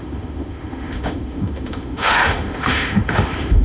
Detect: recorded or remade remade